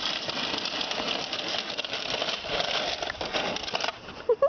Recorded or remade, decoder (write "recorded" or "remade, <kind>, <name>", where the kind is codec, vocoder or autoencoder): recorded